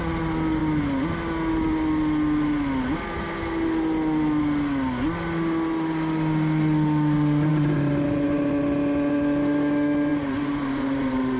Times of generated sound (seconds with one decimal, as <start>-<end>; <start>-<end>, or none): 7.5-8.5; 10.1-11.4